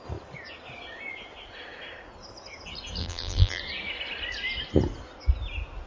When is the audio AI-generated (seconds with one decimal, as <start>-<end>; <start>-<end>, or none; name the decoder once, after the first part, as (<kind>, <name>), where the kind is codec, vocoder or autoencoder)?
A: 3.0-3.6 (vocoder, BigVGAN v2)